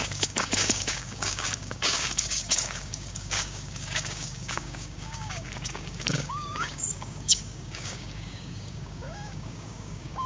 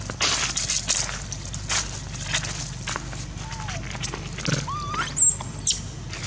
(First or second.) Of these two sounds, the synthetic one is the first